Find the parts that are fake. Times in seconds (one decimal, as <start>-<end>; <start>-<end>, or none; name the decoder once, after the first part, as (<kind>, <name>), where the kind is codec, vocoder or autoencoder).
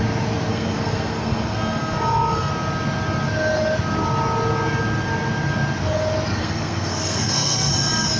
0.5-2.5 (codec, SNAC); 6.4-7.7